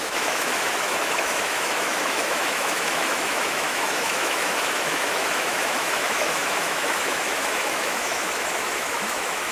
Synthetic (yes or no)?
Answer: yes